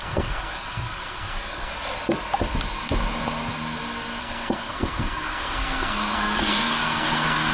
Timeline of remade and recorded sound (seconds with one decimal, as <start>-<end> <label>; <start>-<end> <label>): 0.0-1.7 remade; 1.7-4.2 recorded; 4.2-7.5 remade